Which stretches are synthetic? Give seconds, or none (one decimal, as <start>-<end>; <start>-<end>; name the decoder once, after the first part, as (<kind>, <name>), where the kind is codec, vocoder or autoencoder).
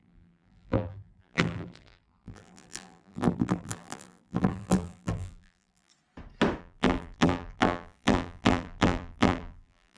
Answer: 0.0-5.9 (vocoder, BigVGAN v2); 6.6-10.0